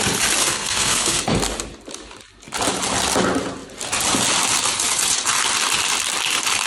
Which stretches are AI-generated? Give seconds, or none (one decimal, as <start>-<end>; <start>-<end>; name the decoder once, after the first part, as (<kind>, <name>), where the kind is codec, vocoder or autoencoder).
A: 0.4-1.4 (codec, SNAC)